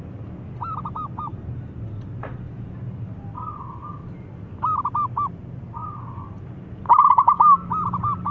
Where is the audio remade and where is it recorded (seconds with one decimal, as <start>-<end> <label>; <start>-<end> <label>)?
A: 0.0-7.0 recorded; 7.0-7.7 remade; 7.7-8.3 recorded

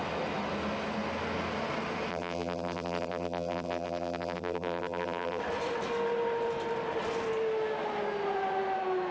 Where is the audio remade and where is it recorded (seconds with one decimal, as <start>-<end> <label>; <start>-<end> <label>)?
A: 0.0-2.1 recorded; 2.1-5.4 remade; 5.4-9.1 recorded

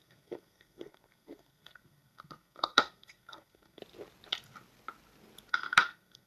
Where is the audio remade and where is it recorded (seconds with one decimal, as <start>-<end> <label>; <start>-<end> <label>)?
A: 0.0-3.8 remade; 3.8-5.5 recorded; 5.5-6.3 remade

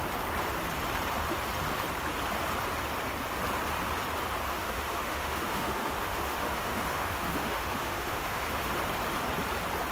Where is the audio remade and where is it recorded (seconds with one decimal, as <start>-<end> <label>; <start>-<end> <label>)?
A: 0.0-4.5 recorded; 4.5-8.7 remade; 8.7-9.9 recorded

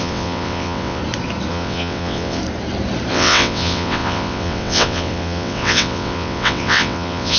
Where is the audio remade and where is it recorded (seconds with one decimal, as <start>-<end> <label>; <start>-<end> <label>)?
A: 0.0-1.0 remade; 1.0-1.5 recorded; 1.5-2.4 remade; 2.4-3.1 recorded; 3.1-7.4 remade

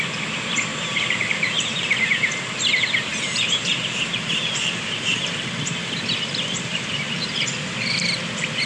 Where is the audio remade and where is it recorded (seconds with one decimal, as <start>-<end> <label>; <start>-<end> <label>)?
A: 0.0-0.7 recorded; 0.7-2.1 remade; 2.1-3.1 recorded; 3.1-5.4 remade; 5.4-6.7 recorded; 6.7-8.0 remade; 8.0-8.7 recorded